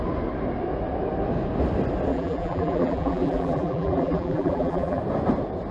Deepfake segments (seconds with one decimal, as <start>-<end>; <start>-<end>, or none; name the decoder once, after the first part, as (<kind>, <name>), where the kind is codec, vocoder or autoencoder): 2.1-5.0 (vocoder, BigVGAN v2)